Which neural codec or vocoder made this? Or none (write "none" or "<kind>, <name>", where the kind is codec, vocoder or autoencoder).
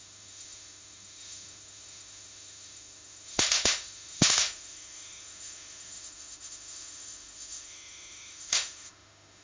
autoencoder, DAC-VAE